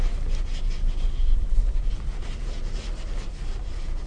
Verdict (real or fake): real